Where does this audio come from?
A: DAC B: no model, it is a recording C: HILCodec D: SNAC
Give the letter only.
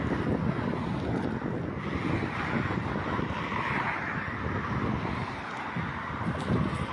B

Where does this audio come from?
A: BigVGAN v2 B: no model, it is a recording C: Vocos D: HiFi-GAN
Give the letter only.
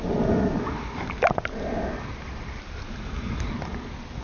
B